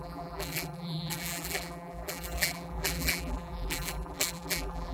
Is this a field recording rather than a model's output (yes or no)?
no